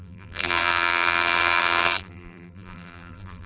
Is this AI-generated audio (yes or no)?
yes